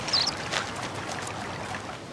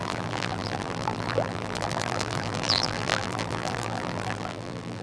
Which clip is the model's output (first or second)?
second